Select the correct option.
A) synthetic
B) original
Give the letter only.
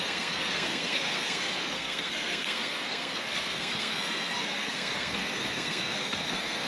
A